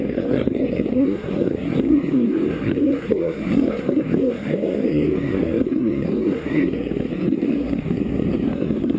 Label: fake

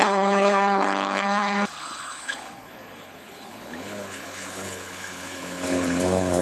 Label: fake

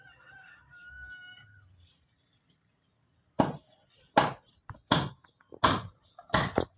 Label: real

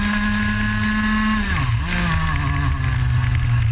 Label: real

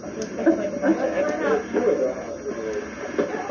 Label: real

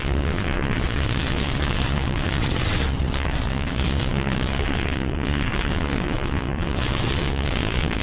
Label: fake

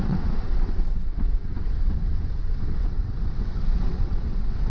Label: fake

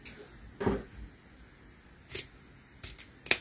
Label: real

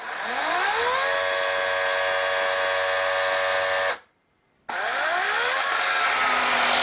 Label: real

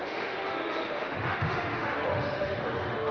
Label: fake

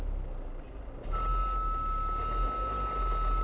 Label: real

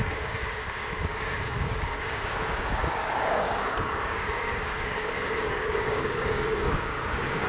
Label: fake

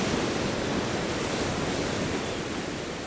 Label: fake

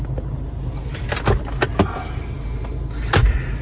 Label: real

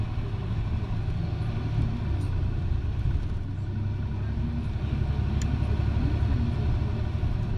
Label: real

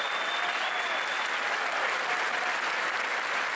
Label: real